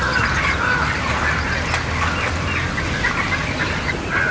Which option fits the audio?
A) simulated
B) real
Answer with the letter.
B